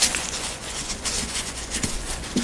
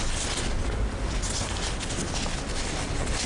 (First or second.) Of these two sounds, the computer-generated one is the first